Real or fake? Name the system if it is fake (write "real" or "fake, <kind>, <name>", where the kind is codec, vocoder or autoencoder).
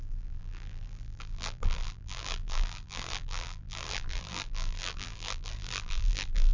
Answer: fake, vocoder, BigVGAN v2